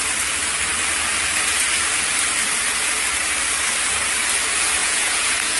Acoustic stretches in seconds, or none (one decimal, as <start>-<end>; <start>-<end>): 0.0-4.8